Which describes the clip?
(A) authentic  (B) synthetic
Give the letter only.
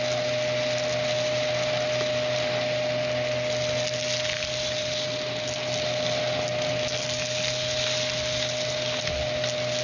A